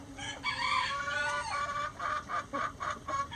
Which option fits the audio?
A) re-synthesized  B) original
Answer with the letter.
A